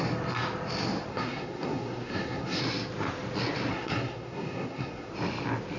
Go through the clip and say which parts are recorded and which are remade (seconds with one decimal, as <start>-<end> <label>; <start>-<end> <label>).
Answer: 0.0-1.1 recorded; 1.1-2.6 remade; 2.6-3.7 recorded; 3.7-5.1 remade; 5.1-5.8 recorded